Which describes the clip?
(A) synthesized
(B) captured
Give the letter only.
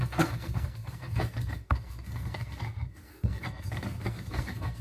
A